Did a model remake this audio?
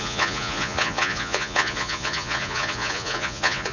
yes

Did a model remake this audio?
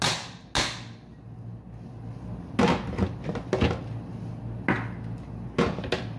no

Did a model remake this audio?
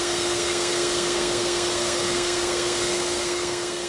yes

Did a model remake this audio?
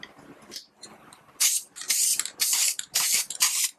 yes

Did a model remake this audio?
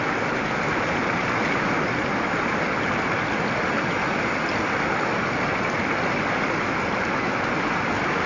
no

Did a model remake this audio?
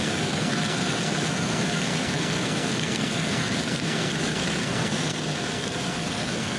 yes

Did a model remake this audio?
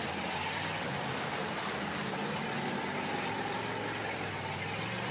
no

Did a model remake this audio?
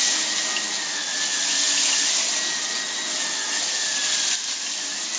no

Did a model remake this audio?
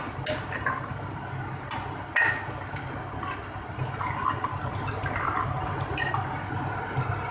no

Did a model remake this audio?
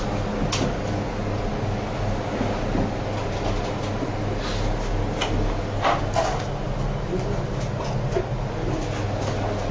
no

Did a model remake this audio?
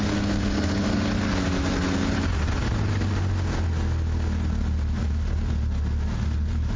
no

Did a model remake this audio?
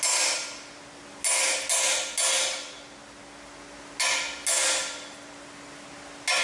no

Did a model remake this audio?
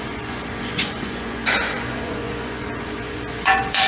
yes